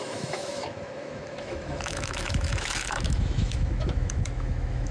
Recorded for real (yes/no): no